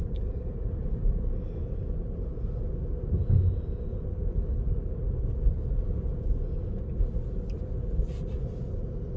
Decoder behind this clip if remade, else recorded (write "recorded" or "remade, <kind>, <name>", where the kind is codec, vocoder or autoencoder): recorded